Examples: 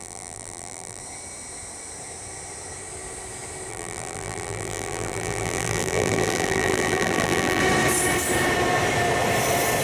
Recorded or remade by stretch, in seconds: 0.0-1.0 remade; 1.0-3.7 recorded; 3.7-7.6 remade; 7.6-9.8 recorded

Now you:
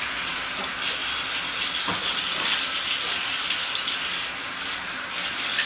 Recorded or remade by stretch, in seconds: 0.0-5.7 recorded

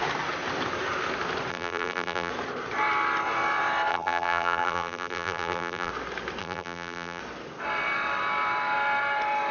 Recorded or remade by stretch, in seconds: 0.0-1.5 recorded; 1.5-2.3 remade; 2.3-3.9 recorded; 3.9-5.9 remade; 5.9-6.4 recorded; 6.4-7.2 remade; 7.2-9.5 recorded

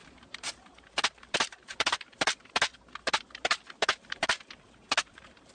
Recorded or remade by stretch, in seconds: 0.0-5.5 remade